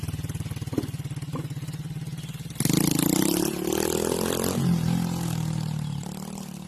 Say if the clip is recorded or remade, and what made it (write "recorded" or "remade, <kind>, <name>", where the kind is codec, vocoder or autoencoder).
recorded